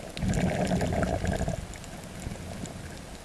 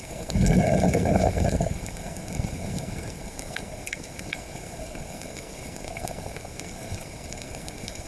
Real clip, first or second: first